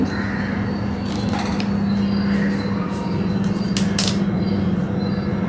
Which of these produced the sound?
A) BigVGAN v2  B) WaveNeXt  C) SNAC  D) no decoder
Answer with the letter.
D